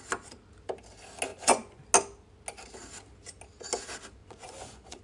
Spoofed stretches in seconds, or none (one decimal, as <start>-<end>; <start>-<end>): 1.3-1.8; 4.2-5.0

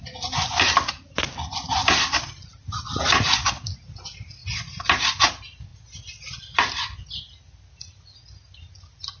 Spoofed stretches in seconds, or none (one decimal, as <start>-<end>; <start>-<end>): none

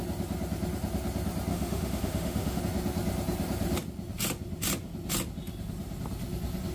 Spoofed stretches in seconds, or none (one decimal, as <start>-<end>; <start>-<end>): 1.5-2.6